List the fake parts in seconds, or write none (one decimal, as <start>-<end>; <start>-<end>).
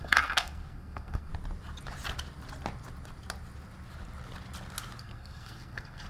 0.0-1.3; 5.0-6.1